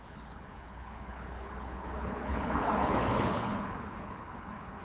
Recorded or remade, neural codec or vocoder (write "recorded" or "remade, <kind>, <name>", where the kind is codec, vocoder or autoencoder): remade, codec, HILCodec